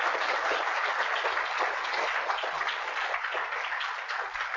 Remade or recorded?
recorded